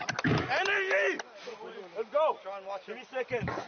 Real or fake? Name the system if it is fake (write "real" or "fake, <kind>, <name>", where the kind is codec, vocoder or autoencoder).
real